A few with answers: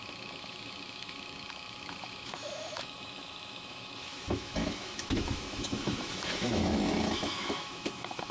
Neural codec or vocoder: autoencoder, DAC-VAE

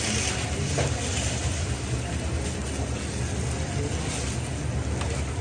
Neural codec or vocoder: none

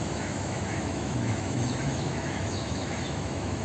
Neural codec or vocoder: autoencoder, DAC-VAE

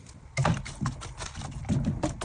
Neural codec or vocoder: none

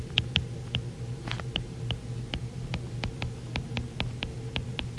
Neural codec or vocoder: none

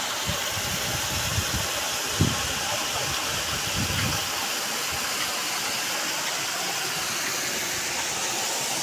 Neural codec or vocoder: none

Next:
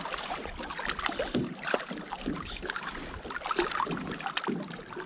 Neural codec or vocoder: none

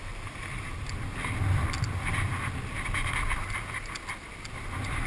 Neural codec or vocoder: none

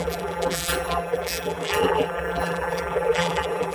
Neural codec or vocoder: vocoder, BigVGAN v2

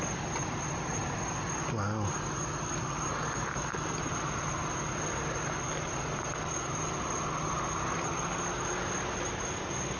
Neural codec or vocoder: none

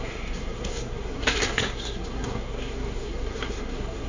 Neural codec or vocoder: codec, SNAC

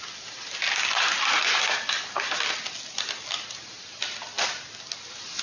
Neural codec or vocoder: none